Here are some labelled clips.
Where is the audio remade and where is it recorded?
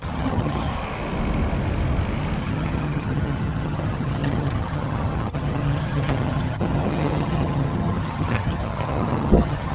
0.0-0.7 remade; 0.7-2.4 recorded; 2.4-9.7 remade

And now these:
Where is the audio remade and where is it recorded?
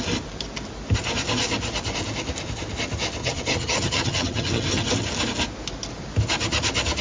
0.0-3.2 recorded; 3.2-4.9 remade; 4.9-7.0 recorded